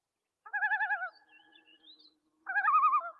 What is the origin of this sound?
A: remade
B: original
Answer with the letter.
B